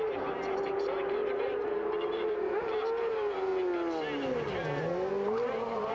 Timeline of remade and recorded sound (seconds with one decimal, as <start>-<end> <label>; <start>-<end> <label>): 0.0-3.5 remade; 3.5-5.1 recorded; 5.1-5.9 remade